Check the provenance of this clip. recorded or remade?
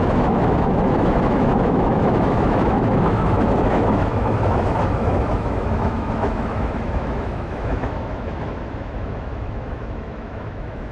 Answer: remade